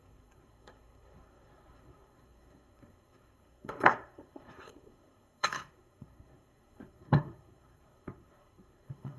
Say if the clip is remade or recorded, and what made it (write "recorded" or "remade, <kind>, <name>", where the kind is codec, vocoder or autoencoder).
remade, codec, SNAC